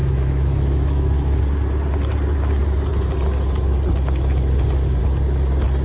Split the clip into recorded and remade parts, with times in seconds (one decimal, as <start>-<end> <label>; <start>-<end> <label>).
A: 0.0-1.4 remade; 1.4-5.8 recorded